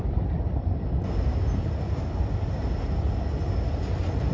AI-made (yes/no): no